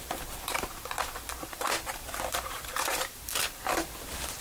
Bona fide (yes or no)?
no